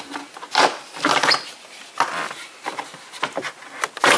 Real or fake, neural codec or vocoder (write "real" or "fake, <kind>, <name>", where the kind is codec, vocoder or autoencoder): real